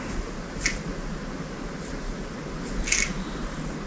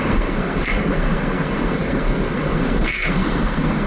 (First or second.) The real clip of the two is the first